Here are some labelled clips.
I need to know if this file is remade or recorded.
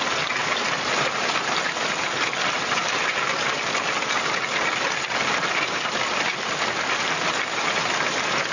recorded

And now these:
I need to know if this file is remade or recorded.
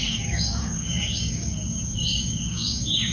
remade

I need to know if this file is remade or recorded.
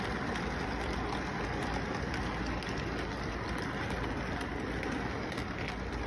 recorded